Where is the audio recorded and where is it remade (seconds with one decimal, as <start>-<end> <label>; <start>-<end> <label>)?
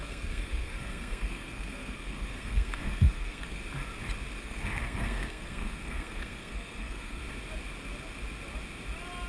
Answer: 0.0-3.6 remade; 3.6-4.4 recorded; 4.4-7.2 remade; 7.2-9.3 recorded